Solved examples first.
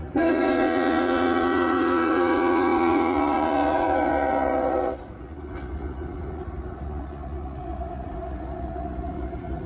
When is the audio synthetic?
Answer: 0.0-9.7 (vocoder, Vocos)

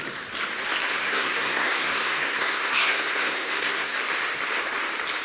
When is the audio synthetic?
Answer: 0.9-4.0 (codec, SNAC)

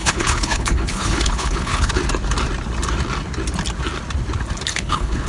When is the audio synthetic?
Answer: 0.0-2.0 (codec, HILCodec); 4.7-5.3